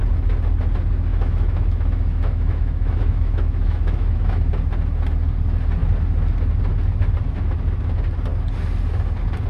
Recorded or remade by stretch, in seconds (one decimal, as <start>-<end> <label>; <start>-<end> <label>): 0.0-1.1 recorded; 1.1-4.5 remade; 4.5-9.5 recorded